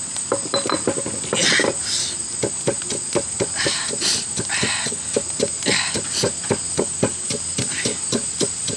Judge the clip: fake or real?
real